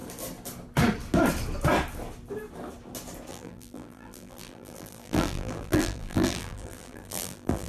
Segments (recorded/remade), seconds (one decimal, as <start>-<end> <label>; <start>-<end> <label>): 0.0-3.3 recorded; 3.3-7.7 remade

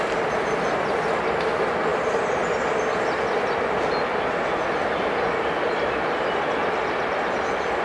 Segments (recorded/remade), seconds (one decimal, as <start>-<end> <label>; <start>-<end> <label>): 0.0-7.8 recorded

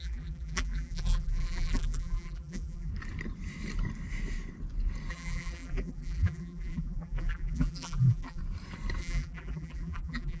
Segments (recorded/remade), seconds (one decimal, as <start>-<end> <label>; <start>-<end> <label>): 0.0-2.9 remade; 2.9-5.1 recorded; 5.1-8.4 remade; 8.4-9.0 recorded; 9.0-10.4 remade

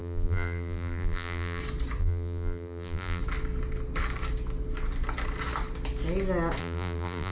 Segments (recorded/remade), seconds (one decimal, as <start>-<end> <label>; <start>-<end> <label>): 0.0-1.6 remade; 1.6-2.0 recorded; 2.0-3.2 remade; 3.2-6.6 recorded; 6.6-7.3 remade

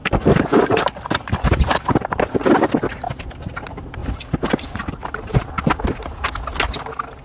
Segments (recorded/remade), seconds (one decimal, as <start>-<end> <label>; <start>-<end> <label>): 0.0-1.8 remade; 1.8-4.0 recorded; 4.0-5.8 remade; 5.8-7.2 recorded

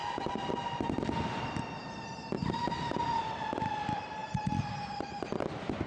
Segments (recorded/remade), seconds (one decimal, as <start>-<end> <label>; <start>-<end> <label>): 0.0-0.5 remade; 0.5-5.9 recorded

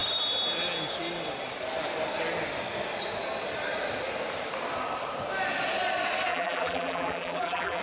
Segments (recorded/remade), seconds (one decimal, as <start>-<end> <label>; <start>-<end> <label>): 0.0-6.3 recorded; 6.3-7.8 remade

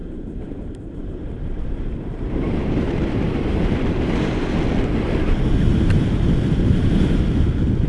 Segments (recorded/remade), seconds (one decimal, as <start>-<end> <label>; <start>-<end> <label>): 0.0-4.5 remade; 4.5-5.7 recorded; 5.7-6.3 remade; 6.3-7.9 recorded